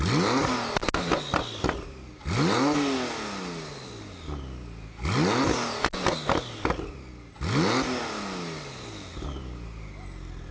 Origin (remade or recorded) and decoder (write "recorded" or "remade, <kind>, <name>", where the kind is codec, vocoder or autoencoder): recorded